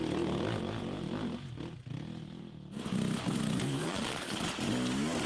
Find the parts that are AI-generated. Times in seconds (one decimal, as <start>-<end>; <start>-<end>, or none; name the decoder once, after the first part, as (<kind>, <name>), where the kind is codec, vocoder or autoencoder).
3.8-4.4 (vocoder, Vocos)